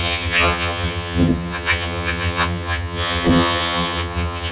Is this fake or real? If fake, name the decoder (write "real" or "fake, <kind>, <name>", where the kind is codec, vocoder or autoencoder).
fake, vocoder, HiFi-GAN